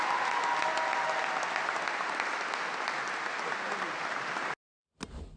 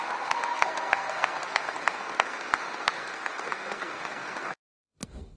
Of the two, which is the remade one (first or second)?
second